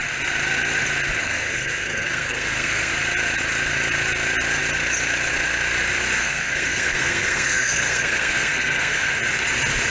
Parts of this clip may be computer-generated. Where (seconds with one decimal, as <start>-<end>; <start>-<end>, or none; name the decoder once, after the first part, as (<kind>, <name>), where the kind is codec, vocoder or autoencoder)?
1.2-2.9 (codec, SNAC); 6.2-9.1